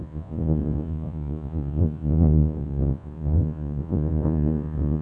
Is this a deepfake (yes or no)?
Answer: yes